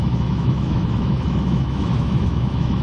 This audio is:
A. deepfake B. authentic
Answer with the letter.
A